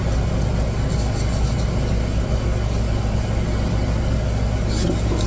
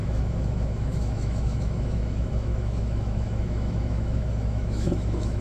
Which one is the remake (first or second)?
second